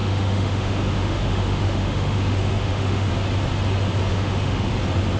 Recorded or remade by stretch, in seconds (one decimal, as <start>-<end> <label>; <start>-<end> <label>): 0.0-3.1 remade; 3.1-4.1 recorded; 4.1-4.7 remade; 4.7-5.2 recorded